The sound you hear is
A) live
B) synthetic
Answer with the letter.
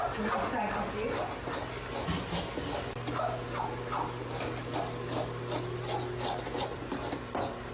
A